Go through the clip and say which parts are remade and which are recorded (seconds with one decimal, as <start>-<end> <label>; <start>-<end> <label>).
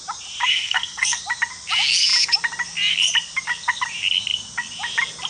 0.0-0.5 recorded; 0.5-1.2 remade; 1.2-5.3 recorded